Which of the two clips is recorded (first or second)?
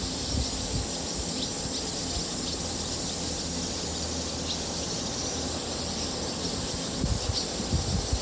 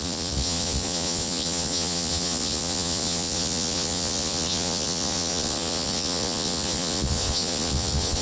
first